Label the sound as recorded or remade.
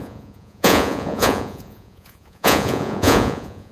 remade